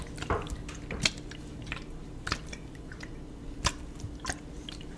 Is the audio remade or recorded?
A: recorded